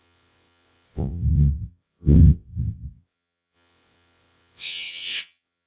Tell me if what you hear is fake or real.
fake